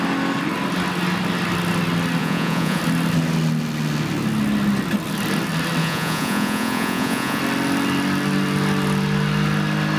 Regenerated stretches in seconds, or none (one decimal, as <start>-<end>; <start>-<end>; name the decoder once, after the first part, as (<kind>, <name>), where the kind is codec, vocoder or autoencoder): 2.2-2.8 (vocoder, Vocos); 5.8-7.4